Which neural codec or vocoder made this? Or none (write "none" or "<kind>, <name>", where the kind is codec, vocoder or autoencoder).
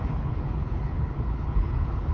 codec, HILCodec